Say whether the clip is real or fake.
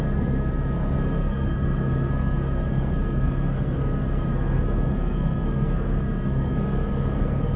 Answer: fake